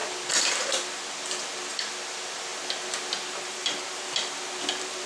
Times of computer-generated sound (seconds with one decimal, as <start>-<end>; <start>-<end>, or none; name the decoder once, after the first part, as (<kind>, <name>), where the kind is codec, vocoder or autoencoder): 0.0-2.5 (vocoder, BigVGAN v2); 4.6-5.1